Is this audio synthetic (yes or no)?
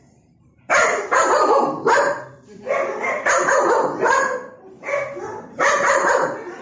yes